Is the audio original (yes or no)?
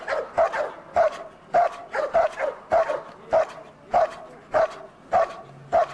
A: yes